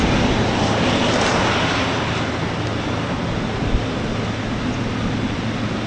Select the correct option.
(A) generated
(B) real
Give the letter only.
B